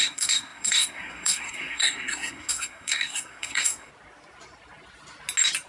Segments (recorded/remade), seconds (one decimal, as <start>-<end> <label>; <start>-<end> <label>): 0.0-3.9 remade; 3.9-5.7 recorded